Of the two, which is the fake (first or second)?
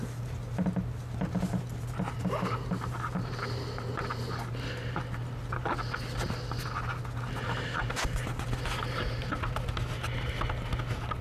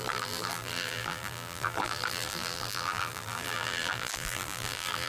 second